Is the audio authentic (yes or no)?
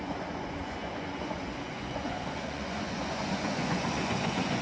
no